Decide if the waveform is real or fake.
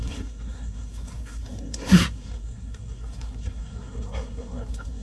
fake